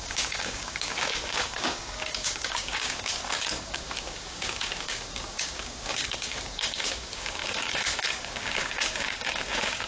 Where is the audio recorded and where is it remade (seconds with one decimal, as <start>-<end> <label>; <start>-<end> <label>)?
0.0-9.9 remade